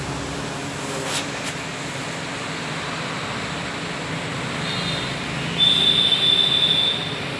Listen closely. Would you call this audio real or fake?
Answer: real